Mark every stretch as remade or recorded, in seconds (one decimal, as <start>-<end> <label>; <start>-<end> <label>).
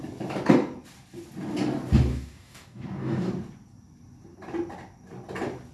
0.0-2.1 recorded; 2.1-3.3 remade; 3.3-5.7 recorded